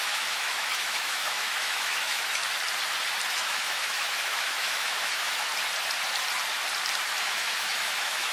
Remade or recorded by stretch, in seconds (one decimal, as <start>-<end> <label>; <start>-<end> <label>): 0.0-2.4 remade; 2.4-3.3 recorded; 3.3-5.5 remade; 5.5-7.2 recorded; 7.2-8.3 remade